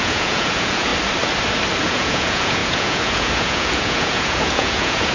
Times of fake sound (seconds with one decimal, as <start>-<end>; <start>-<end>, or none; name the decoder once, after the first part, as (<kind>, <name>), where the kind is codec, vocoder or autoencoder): 0.0-0.9 (vocoder, Vocos); 1.8-5.1